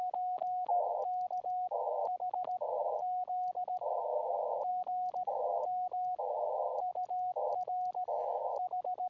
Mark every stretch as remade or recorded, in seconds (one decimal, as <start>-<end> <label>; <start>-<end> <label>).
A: 0.0-9.1 recorded